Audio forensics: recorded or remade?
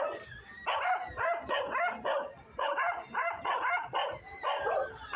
recorded